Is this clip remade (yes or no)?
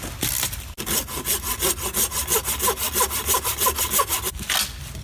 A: no